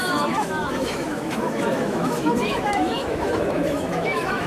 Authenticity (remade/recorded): remade